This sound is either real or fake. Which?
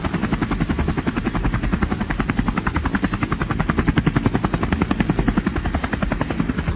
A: real